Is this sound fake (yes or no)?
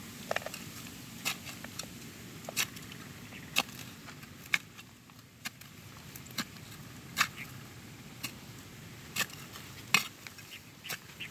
no